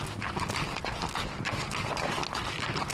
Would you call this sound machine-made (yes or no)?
no